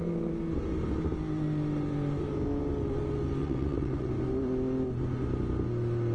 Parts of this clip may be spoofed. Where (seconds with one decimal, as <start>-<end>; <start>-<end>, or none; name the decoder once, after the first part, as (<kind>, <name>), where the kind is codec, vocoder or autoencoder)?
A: 3.4-4.1 (vocoder, WaveNeXt)